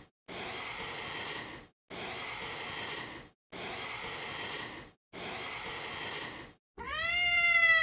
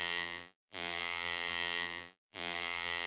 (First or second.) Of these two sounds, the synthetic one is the second